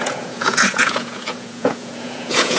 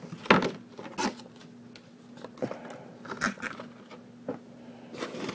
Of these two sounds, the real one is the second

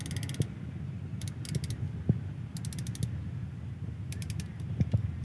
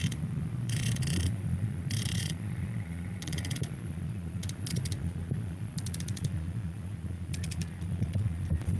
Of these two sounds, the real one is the first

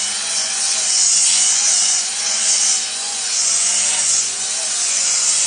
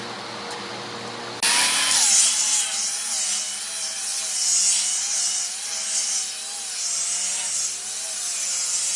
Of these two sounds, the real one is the second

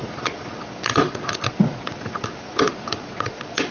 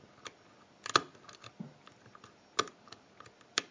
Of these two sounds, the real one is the second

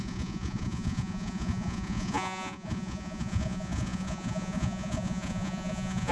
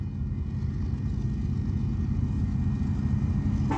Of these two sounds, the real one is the second